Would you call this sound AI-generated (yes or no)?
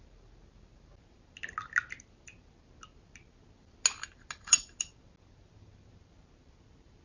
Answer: no